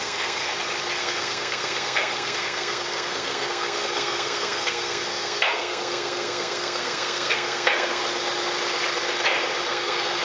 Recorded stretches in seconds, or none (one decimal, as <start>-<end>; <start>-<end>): 0.5-1.0; 8.0-9.7